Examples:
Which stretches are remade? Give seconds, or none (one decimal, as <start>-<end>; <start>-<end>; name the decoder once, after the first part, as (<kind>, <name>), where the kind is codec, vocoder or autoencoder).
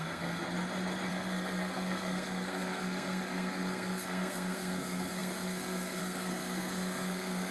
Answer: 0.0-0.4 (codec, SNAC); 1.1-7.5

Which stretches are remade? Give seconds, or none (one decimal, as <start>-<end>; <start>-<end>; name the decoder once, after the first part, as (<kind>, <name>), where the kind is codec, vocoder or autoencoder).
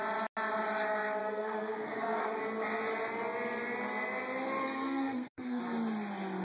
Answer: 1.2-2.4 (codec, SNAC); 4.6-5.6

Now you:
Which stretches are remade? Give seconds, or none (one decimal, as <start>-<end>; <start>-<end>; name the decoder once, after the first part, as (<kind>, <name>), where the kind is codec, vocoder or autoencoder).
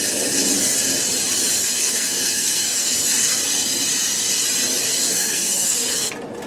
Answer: 1.6-3.4 (codec, SNAC); 4.8-6.1